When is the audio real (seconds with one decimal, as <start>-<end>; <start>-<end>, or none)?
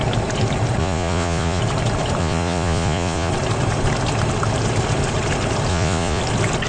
0.0-0.8; 1.6-2.2; 3.3-5.7; 6.2-6.7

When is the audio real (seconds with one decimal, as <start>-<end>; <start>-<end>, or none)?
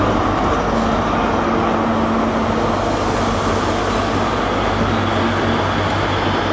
0.0-6.5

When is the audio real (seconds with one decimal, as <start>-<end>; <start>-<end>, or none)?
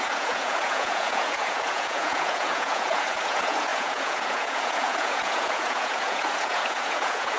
none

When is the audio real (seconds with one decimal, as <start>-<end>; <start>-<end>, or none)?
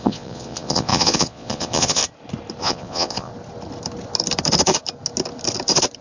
2.0-2.6; 3.3-6.0